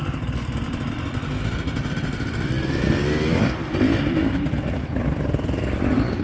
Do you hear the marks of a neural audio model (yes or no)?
yes